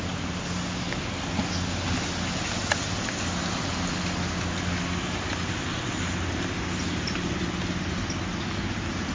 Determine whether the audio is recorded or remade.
recorded